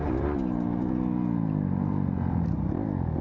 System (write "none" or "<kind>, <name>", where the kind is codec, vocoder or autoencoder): none